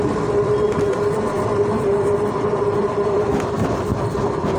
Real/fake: fake